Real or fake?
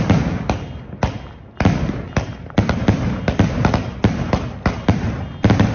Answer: real